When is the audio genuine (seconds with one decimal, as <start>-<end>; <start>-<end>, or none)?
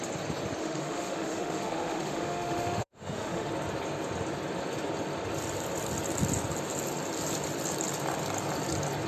0.0-0.6; 3.5-9.1